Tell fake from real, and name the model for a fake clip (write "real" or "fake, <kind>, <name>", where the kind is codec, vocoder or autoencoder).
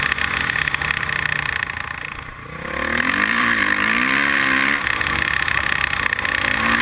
real